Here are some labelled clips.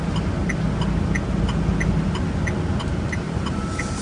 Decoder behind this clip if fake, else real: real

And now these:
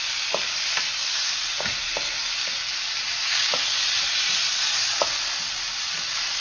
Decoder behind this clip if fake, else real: real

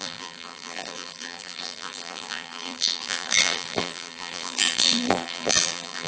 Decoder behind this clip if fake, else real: fake, vocoder, BigVGAN v2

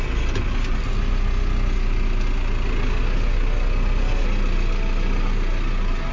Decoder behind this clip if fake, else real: real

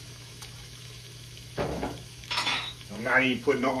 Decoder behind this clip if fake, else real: fake, autoencoder, DAC-VAE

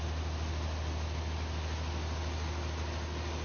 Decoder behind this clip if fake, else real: real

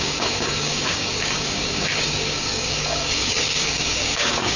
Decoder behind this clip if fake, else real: fake, codec, DAC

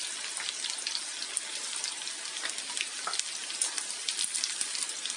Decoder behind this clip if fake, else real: real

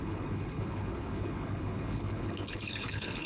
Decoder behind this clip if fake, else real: fake, codec, HILCodec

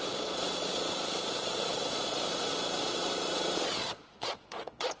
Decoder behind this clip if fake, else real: fake, vocoder, Vocos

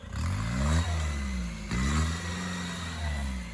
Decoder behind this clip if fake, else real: real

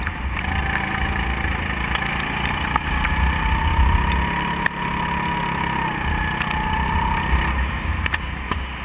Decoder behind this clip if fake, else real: real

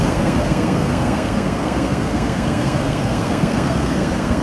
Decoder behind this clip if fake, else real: fake, codec, SNAC